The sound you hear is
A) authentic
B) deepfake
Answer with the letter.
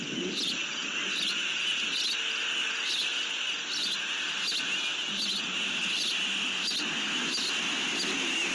A